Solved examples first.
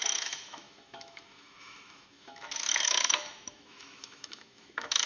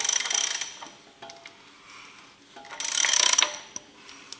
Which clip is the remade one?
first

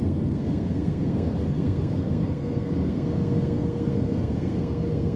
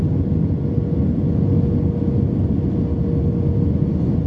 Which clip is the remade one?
first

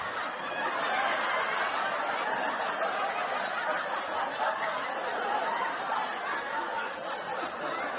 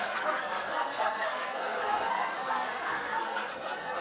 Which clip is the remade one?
second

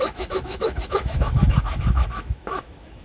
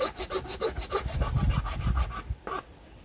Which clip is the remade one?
first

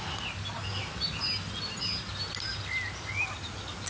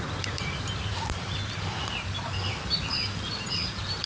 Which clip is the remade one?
second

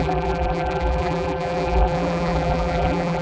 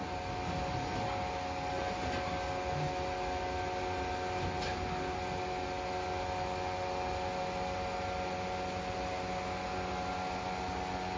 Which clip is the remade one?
first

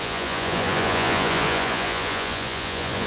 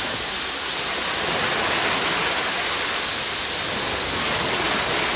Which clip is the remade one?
first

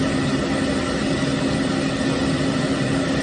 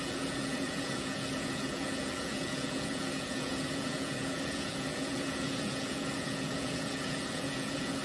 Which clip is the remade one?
second